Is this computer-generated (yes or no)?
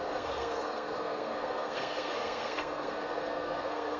yes